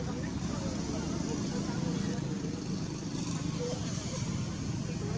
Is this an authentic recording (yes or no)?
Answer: yes